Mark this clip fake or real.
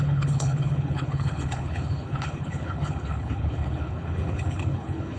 fake